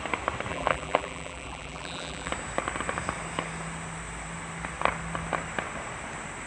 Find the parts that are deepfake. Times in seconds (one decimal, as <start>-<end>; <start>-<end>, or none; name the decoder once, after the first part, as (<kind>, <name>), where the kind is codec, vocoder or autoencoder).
0.5-2.3 (vocoder, BigVGAN v2)